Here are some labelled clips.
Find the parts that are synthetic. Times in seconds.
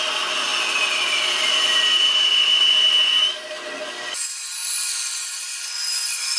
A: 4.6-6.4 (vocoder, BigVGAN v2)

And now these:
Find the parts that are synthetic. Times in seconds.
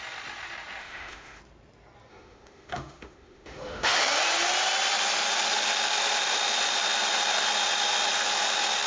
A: 0.8-1.4 (autoencoder, DAC-VAE); 2.1-4.0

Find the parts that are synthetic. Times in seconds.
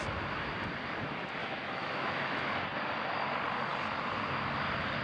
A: 1.4-2.5 (autoencoder, DAC-VAE)